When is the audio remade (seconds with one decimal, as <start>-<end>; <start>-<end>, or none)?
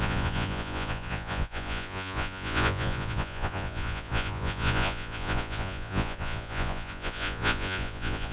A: 0.0-8.3